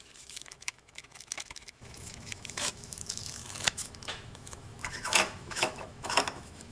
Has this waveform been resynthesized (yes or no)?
yes